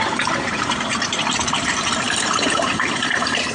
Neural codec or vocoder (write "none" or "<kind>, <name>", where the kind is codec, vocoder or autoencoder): vocoder, BigVGAN v2